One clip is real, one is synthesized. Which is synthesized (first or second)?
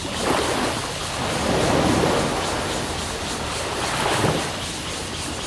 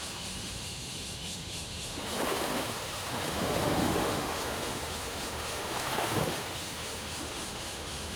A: second